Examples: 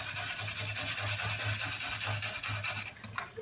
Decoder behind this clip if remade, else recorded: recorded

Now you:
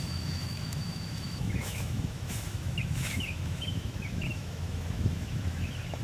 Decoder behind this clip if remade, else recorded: remade, autoencoder, DAC-VAE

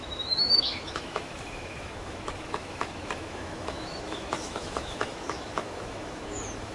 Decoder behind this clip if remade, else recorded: remade, autoencoder, DAC-VAE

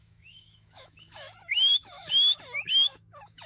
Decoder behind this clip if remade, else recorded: remade, autoencoder, DAC-VAE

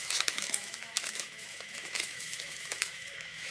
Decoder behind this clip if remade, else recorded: remade, autoencoder, DAC-VAE